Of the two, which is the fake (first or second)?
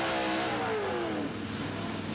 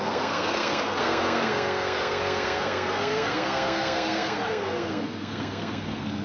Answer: second